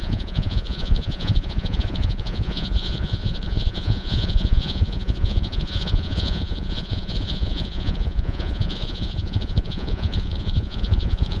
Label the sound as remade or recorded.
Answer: remade